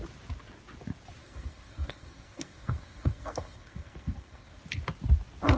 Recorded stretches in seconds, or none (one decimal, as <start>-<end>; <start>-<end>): 0.0-1.2; 4.6-5.6